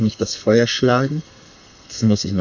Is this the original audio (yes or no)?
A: no